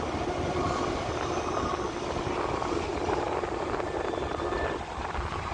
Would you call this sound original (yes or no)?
yes